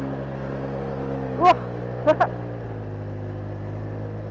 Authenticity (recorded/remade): recorded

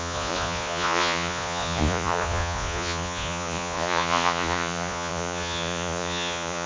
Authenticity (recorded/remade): remade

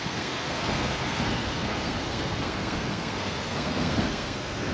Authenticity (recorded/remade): remade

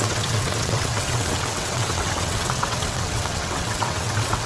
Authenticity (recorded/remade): remade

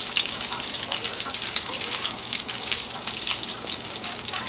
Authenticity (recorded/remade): remade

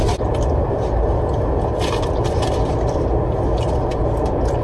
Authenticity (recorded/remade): recorded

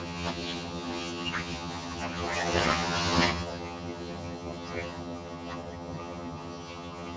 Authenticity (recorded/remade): remade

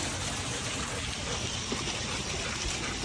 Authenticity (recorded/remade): recorded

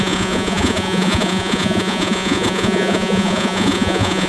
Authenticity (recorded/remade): remade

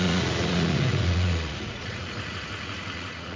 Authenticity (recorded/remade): remade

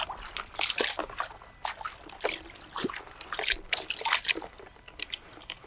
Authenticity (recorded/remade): recorded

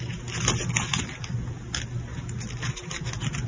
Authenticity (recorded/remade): recorded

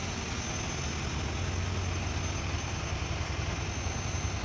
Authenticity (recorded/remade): recorded